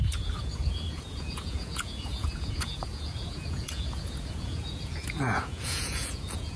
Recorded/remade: remade